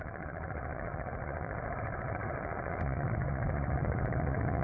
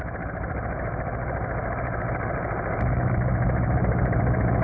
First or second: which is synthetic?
first